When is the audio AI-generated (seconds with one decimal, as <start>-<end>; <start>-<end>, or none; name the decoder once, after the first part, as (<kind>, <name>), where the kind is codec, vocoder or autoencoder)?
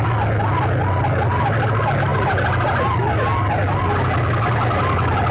none